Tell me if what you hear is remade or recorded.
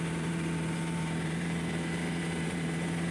remade